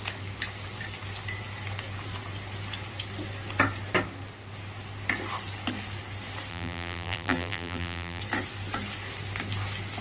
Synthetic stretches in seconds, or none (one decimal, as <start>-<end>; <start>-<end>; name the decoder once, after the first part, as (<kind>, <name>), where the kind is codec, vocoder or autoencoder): 6.5-8.2 (vocoder, BigVGAN v2)